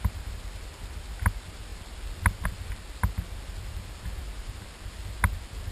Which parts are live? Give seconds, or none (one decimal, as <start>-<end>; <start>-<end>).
0.0-5.7

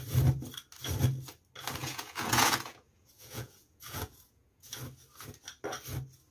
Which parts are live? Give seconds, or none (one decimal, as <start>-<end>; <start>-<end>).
0.0-1.8; 4.8-6.3

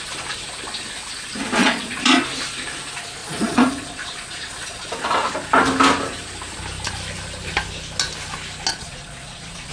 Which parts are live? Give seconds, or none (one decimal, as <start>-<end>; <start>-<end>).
0.0-1.6; 2.2-3.2; 4.9-8.7

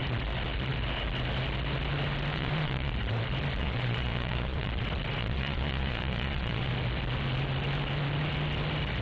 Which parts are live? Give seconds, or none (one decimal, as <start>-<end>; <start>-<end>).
0.0-2.3; 2.9-3.6; 4.7-5.2; 6.7-9.0

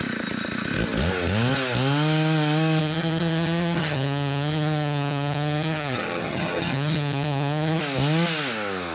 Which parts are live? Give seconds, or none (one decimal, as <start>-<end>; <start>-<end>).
0.0-2.8; 7.8-8.9

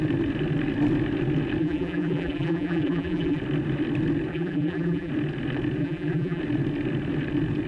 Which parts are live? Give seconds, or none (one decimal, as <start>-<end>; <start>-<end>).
0.0-1.6; 3.4-4.3; 5.1-5.8; 6.4-7.7

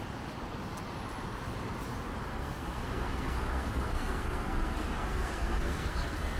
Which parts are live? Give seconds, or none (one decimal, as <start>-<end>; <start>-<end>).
0.0-2.3